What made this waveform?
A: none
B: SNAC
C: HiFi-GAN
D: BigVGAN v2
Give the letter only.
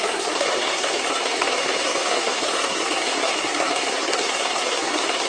B